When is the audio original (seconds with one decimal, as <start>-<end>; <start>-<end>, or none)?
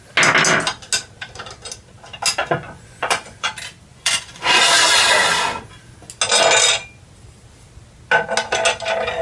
0.0-2.4; 3.5-3.9; 4.6-9.2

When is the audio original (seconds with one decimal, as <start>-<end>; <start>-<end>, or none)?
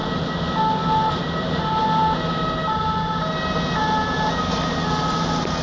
0.0-5.6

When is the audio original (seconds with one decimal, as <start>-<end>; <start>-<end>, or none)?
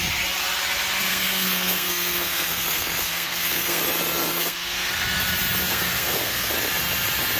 0.0-1.1; 3.8-4.3; 4.9-5.7; 6.5-7.4